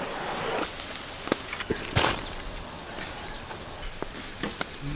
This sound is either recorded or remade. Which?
recorded